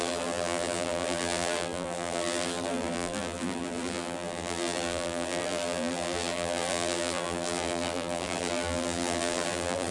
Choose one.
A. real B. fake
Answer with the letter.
B